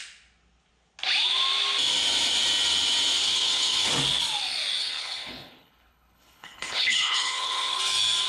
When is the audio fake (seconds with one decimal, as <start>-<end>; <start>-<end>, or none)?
3.2-3.9; 4.8-7.8